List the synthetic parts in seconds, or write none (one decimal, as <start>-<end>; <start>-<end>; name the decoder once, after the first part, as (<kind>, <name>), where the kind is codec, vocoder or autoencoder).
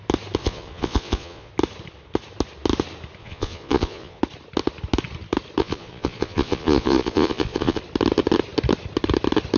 0.4-1.5 (vocoder, Vocos); 3.2-4.2; 5.6-7.8